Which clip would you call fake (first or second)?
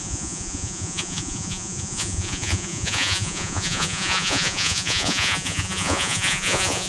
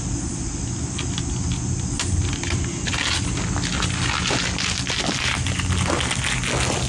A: first